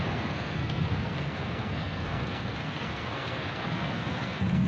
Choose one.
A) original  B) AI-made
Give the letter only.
B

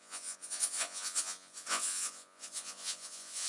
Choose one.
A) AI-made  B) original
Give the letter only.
A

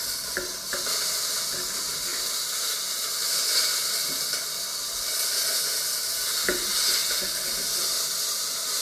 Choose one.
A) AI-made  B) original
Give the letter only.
B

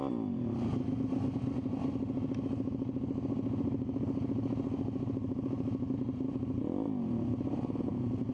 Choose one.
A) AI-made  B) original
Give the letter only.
B